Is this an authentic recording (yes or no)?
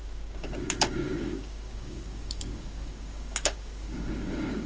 no